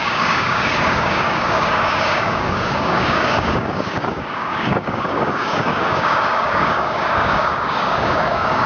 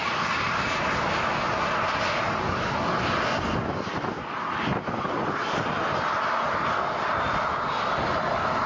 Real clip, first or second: second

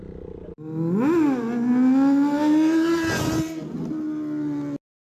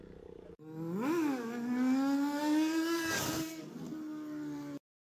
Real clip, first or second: first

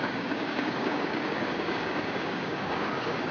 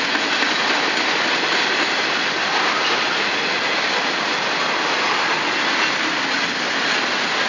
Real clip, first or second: second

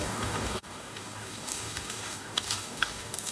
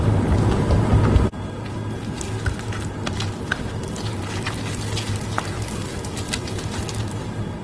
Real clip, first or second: second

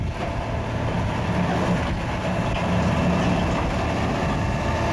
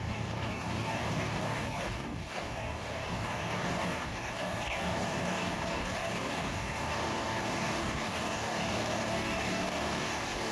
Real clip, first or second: first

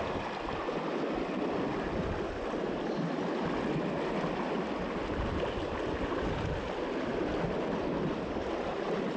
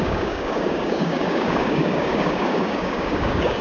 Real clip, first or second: first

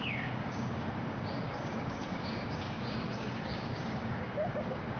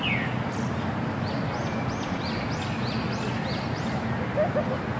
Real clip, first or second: second